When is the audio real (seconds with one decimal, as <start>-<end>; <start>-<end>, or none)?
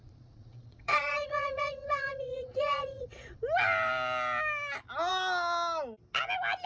3.4-6.7